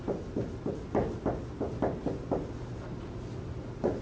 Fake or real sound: real